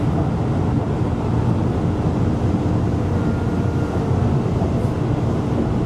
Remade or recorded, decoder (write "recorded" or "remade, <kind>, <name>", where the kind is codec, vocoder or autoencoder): recorded